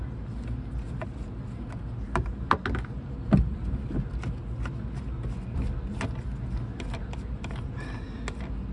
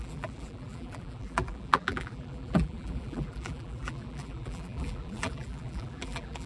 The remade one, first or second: second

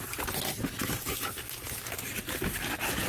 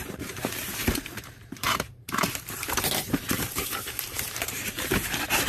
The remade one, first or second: second